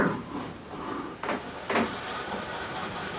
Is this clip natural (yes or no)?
no